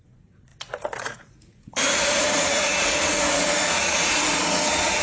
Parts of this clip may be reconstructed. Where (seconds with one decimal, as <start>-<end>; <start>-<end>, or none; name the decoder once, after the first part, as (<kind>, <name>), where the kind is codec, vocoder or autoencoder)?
0.0-5.0 (vocoder, Vocos)